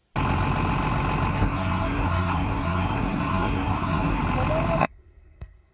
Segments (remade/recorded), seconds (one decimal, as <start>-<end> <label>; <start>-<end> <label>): 0.0-1.3 recorded; 1.3-4.2 remade; 4.2-4.8 recorded; 4.8-5.7 remade